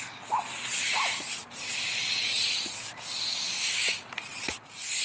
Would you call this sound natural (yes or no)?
yes